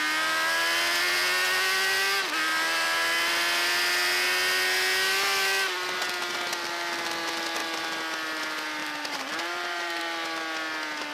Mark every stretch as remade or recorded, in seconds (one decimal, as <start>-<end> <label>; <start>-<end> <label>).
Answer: 0.0-8.8 recorded; 8.8-10.0 remade; 10.0-11.1 recorded